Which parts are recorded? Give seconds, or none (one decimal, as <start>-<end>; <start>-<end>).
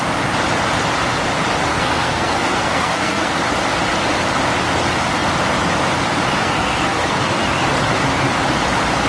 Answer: 0.0-1.7; 3.3-6.4; 7.4-9.1